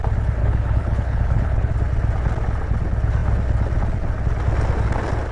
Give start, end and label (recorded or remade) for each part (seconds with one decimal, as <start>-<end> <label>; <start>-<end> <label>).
0.0-0.4 recorded; 0.4-1.7 remade; 1.7-5.3 recorded